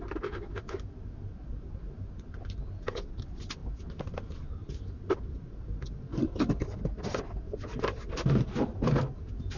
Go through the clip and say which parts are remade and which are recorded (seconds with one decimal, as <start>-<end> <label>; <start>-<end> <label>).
0.0-6.1 recorded; 6.1-6.8 remade; 6.8-9.6 recorded